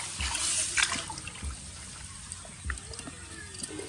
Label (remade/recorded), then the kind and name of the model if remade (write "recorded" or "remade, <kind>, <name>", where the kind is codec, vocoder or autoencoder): recorded